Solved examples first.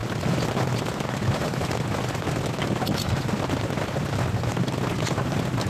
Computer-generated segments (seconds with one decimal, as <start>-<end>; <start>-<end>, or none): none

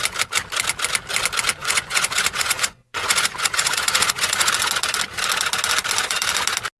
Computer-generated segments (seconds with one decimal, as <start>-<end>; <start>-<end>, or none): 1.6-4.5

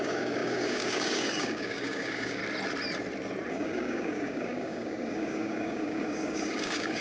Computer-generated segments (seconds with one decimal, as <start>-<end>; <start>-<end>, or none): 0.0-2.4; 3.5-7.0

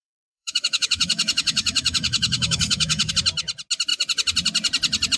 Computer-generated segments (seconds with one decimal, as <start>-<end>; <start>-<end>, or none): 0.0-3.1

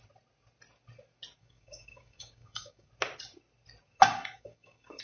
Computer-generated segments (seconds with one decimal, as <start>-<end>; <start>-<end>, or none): 1.4-2.9; 4.2-5.0

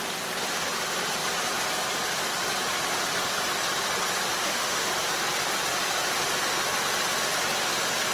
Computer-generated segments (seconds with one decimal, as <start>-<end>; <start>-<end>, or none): 4.4-4.9

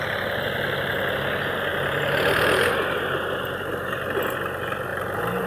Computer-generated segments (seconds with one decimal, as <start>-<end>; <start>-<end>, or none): 1.7-2.7; 4.9-5.5

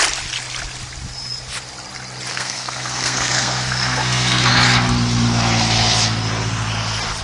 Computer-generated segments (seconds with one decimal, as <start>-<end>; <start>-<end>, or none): 2.3-4.5